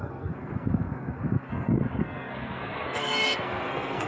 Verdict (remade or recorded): remade